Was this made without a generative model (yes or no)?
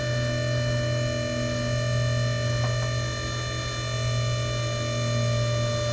yes